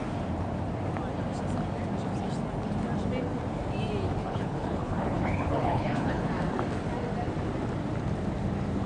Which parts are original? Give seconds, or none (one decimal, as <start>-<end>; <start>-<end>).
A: 0.0-4.2; 6.2-8.9